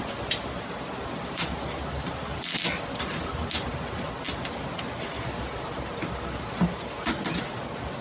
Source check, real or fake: real